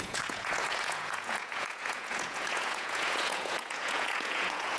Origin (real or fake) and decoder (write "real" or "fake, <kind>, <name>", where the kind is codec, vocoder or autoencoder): fake, vocoder, Vocos